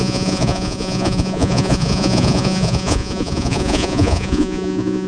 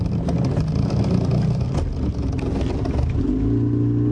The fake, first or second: first